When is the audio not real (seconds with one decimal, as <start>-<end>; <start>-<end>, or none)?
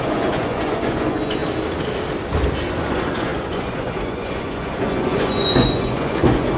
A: 0.0-1.4; 2.8-6.6